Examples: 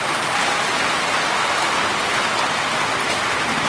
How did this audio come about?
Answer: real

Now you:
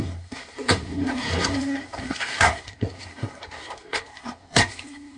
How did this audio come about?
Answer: fake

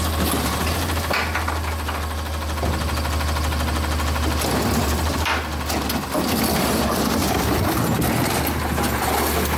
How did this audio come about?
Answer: real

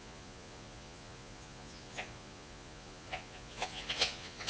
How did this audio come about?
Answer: fake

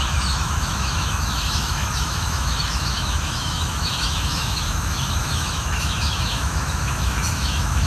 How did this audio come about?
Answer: fake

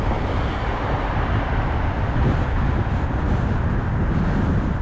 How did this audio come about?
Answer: real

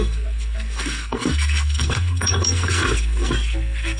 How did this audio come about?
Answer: fake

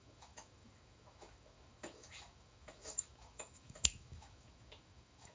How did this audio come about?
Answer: fake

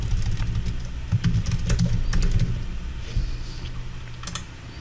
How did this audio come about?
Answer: real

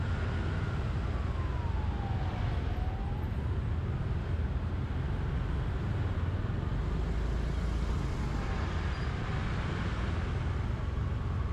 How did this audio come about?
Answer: real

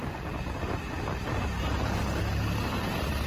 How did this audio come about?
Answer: real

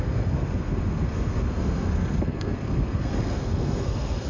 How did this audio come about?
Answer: fake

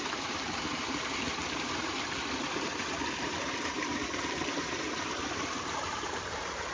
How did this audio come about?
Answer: fake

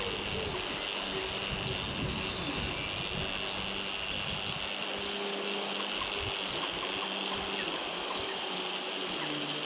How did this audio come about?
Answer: real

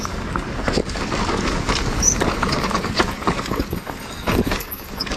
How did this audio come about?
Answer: fake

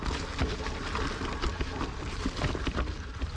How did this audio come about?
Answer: real